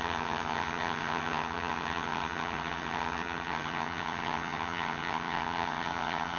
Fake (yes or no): yes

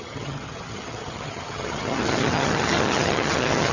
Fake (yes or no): yes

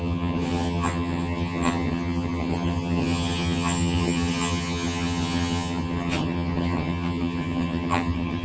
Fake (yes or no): yes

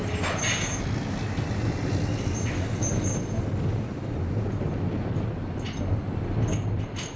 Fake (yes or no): no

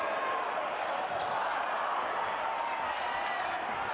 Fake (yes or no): no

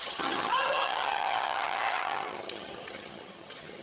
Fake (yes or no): yes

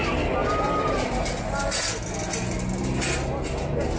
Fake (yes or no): no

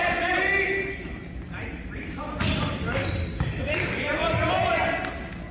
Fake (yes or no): no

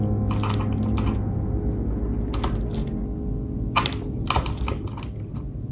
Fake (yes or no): no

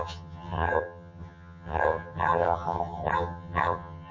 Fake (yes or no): yes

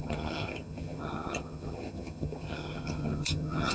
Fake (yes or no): yes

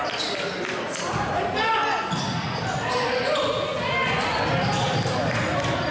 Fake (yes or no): no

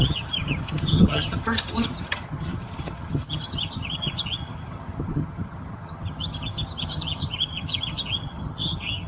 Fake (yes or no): yes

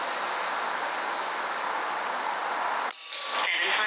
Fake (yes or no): no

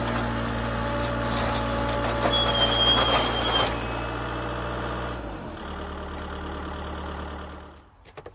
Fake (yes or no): no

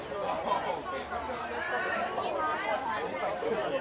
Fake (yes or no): no